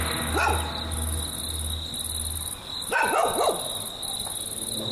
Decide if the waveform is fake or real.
real